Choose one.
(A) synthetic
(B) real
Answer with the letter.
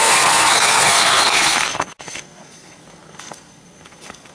A